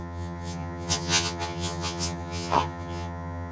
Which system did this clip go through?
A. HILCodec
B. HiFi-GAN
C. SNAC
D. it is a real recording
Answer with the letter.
B